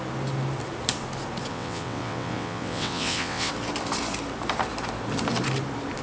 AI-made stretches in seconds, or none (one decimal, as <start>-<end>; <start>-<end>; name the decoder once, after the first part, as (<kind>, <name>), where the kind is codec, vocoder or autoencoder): 1.5-3.5 (vocoder, WaveNeXt)